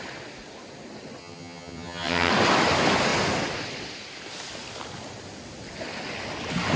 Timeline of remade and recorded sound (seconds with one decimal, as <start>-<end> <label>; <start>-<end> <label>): 0.0-1.2 recorded; 1.2-2.3 remade; 2.3-6.8 recorded

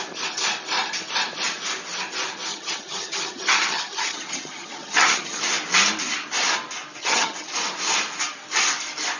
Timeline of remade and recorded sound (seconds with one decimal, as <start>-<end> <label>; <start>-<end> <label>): 0.0-2.5 recorded; 2.5-5.4 remade; 5.4-7.0 recorded; 7.0-7.5 remade; 7.5-9.2 recorded

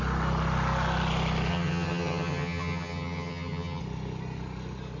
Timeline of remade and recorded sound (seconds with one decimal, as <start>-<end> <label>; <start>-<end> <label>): 0.0-1.5 recorded; 1.5-3.8 remade; 3.8-5.0 recorded

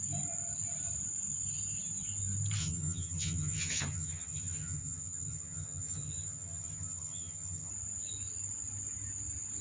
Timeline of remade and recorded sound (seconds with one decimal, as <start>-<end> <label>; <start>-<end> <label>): 0.0-2.6 recorded; 2.6-7.7 remade; 7.7-9.6 recorded

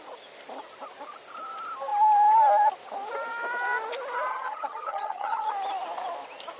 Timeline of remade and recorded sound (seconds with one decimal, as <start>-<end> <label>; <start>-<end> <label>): 0.0-4.3 recorded; 4.3-5.5 remade; 5.5-6.6 recorded

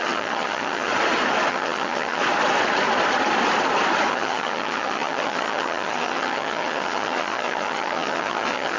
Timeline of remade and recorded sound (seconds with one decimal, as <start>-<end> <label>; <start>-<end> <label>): 0.0-0.9 remade; 0.9-1.5 recorded; 1.5-2.2 remade; 2.2-4.1 recorded; 4.1-8.8 remade